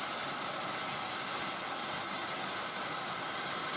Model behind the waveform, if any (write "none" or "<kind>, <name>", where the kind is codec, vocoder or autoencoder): vocoder, BigVGAN v2